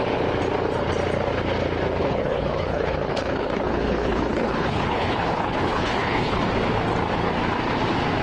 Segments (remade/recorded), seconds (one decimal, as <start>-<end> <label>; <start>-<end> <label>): 0.0-2.0 recorded; 2.0-6.4 remade; 6.4-8.2 recorded